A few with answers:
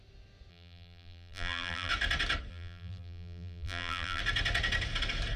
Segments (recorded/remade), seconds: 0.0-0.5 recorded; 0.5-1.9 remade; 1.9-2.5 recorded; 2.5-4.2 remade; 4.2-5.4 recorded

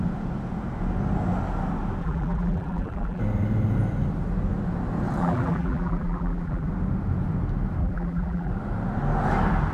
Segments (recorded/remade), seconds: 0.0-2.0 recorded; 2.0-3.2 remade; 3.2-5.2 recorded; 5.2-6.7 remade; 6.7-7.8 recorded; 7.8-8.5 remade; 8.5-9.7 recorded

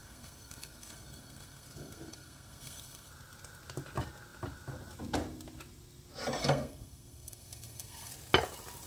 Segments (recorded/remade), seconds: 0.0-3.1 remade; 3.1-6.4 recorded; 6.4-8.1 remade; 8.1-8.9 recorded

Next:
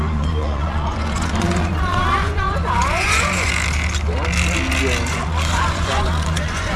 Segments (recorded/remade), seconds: 0.0-3.5 remade; 3.5-5.1 recorded; 5.1-6.8 remade